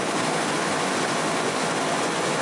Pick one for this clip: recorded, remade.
remade